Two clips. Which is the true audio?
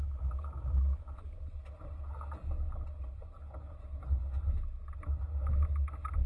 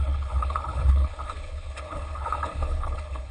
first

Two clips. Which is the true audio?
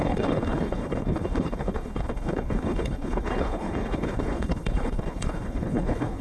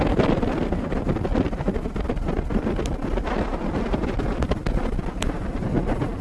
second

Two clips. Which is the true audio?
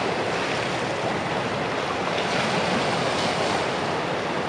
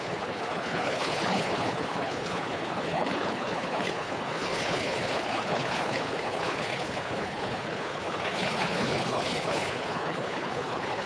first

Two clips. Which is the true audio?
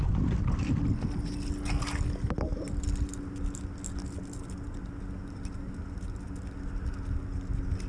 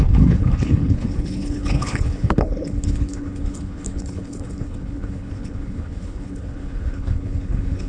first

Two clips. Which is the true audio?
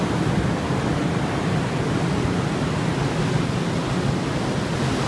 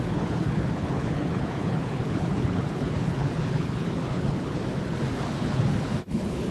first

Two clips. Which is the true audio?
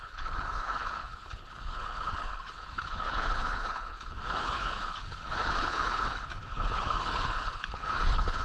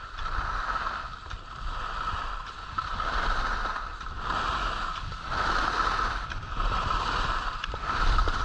second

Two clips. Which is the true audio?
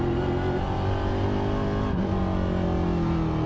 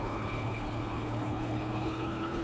first